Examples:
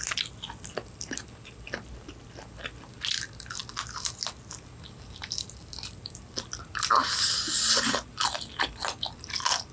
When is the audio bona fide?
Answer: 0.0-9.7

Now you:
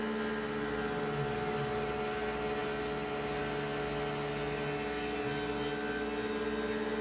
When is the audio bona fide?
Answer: 0.0-7.0

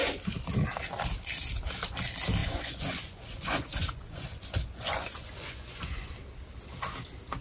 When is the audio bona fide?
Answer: 0.0-2.4; 6.1-7.4

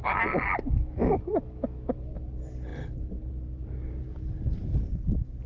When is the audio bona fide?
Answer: 0.0-5.5

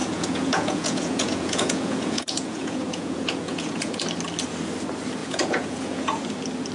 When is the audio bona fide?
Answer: 4.0-5.2; 6.2-6.7